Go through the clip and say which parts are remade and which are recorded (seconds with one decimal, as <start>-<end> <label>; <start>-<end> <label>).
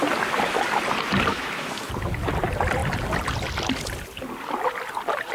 0.0-1.3 recorded; 1.3-1.9 remade; 1.9-5.3 recorded